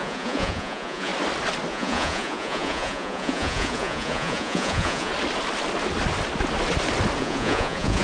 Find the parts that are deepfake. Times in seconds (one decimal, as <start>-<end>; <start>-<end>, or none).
0.0-1.1; 1.7-5.1; 7.2-8.0